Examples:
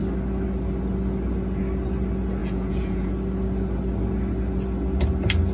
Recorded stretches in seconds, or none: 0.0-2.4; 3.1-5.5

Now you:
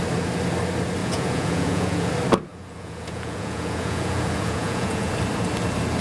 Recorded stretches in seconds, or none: 0.0-1.0; 2.1-2.5; 5.1-6.0

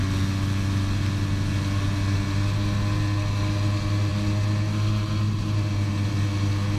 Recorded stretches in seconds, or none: 0.0-6.8

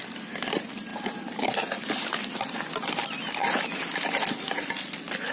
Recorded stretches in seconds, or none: 0.0-5.3

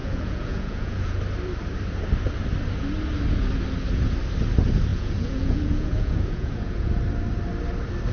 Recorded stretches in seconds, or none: 1.2-4.9; 7.0-8.1

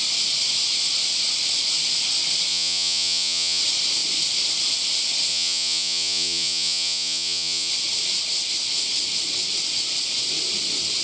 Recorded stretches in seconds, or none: 0.0-2.5; 3.6-5.3; 7.7-11.0